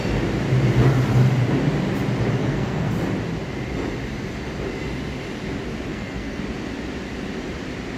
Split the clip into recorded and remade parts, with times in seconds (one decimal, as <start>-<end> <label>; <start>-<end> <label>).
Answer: 0.0-2.4 recorded; 2.4-3.0 remade; 3.0-5.9 recorded; 5.9-6.4 remade; 6.4-8.0 recorded